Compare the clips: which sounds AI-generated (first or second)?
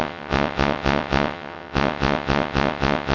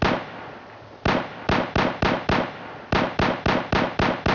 first